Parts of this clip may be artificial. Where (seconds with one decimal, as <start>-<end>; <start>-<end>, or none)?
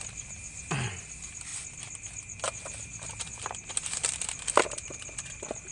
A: none